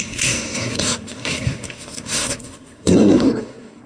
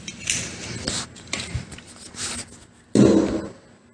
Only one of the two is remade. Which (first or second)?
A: first